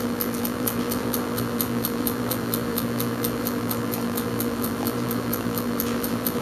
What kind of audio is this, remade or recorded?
remade